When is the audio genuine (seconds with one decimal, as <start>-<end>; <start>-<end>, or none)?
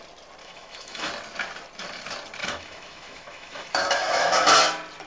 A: 0.0-0.4; 1.1-2.4; 4.5-5.1